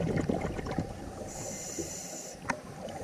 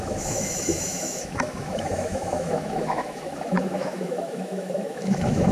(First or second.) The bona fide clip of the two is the first